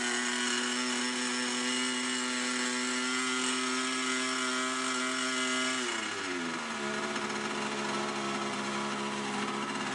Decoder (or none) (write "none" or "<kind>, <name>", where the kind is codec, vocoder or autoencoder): none